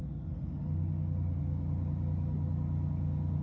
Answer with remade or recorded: recorded